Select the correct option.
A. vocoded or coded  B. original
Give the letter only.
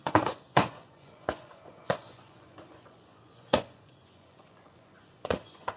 A